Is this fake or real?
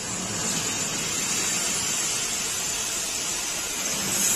real